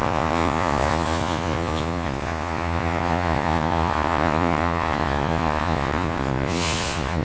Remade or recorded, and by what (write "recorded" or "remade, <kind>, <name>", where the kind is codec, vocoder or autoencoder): remade, vocoder, Vocos